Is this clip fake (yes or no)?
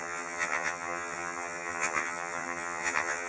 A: yes